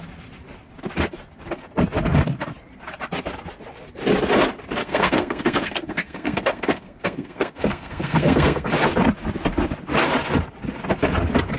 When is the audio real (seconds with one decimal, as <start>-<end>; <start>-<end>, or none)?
0.0-4.8; 8.7-11.6